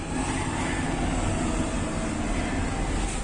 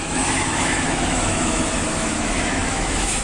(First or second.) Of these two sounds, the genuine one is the first